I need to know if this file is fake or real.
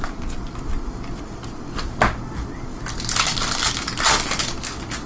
real